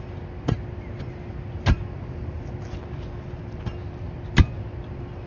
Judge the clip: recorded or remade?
recorded